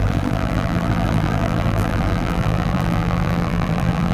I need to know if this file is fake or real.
fake